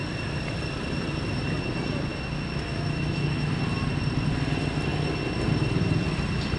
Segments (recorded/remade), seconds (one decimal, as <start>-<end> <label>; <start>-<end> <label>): 0.0-2.1 recorded; 2.1-3.5 remade; 3.5-6.6 recorded